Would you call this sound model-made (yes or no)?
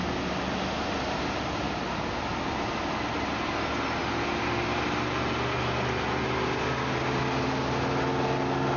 no